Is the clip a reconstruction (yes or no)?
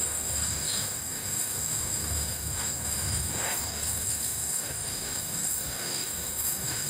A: yes